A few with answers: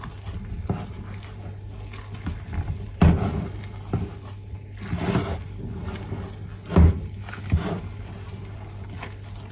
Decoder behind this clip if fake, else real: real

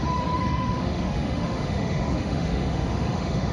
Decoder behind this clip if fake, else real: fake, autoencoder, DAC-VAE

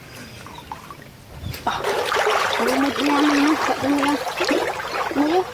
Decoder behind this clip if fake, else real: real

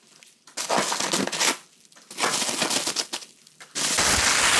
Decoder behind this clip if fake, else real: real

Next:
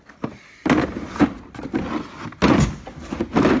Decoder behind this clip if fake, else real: real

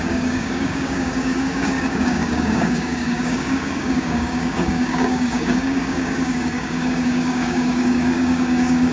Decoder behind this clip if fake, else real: fake, codec, DAC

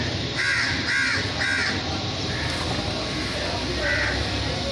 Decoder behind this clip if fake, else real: real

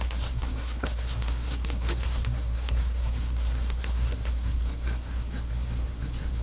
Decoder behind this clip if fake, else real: fake, codec, SNAC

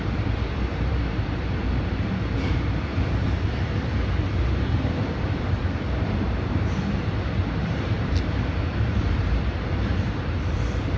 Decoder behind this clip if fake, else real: fake, vocoder, BigVGAN v2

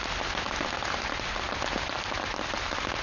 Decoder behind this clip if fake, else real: real